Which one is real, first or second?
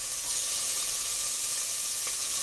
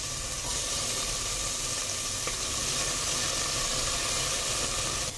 second